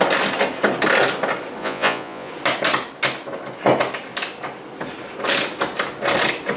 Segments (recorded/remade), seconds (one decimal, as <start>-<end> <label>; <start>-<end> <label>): 0.0-1.6 recorded; 1.6-2.3 remade; 2.3-6.6 recorded